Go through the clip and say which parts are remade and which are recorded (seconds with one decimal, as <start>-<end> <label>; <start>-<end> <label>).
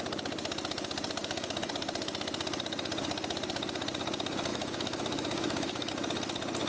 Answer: 0.0-1.2 recorded; 1.2-1.7 remade; 1.7-4.5 recorded; 4.5-5.9 remade; 5.9-6.7 recorded